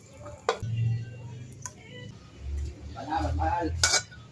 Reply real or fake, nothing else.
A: real